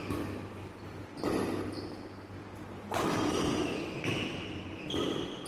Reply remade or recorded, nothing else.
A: recorded